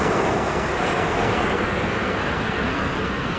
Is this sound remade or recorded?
remade